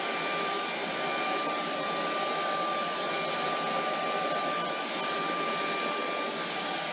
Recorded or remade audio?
recorded